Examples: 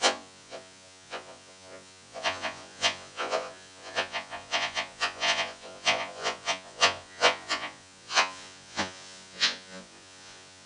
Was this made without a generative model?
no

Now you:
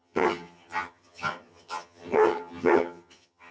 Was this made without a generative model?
no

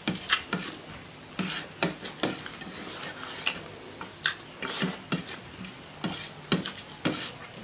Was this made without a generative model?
yes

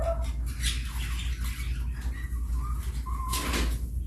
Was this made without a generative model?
yes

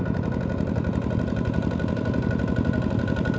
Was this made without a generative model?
yes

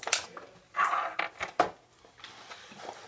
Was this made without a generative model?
yes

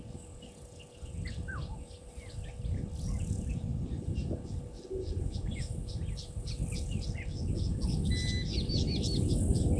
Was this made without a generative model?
yes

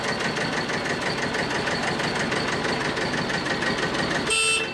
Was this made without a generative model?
yes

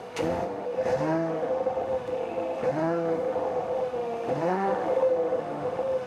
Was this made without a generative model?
no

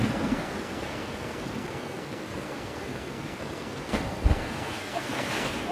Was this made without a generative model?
no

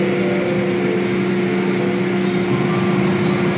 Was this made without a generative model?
yes